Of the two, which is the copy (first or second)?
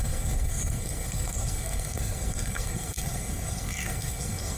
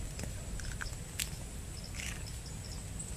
first